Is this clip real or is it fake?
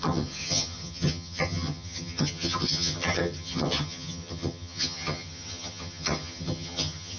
fake